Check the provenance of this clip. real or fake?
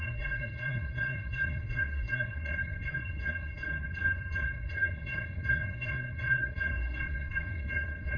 fake